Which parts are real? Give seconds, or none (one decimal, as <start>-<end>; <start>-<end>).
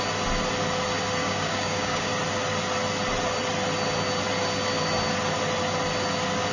0.0-1.2; 2.1-6.5